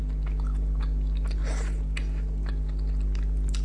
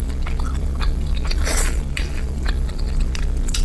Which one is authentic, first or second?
first